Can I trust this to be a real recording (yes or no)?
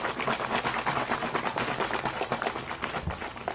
yes